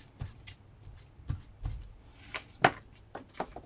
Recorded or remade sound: recorded